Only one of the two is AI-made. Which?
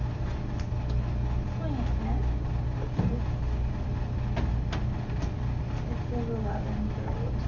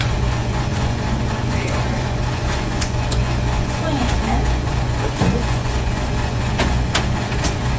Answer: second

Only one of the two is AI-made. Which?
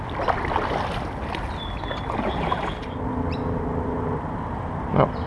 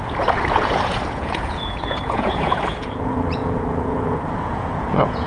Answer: second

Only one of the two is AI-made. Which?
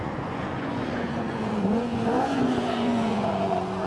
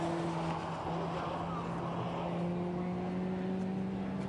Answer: first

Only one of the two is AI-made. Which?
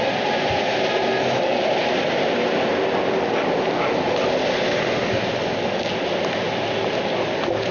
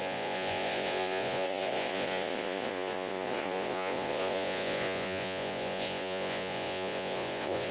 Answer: second